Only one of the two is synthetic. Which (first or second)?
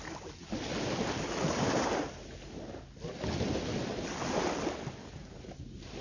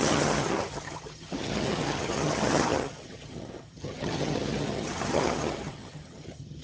second